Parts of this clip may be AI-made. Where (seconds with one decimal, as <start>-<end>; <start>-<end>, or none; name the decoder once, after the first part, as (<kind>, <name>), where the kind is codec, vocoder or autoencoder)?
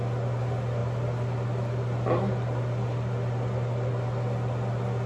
none